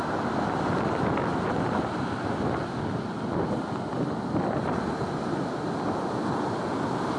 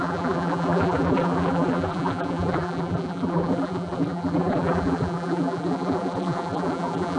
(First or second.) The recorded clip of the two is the first